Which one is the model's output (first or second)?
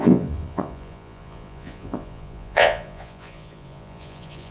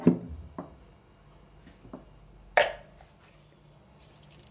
first